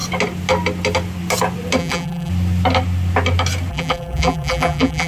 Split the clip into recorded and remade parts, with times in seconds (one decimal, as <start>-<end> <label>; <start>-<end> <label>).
0.0-1.8 recorded; 1.8-2.3 remade; 2.3-3.7 recorded; 3.7-5.1 remade